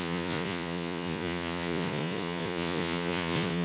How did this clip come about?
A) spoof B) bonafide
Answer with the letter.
A